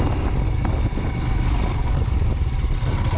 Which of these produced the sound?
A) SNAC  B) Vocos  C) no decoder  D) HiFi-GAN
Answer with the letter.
C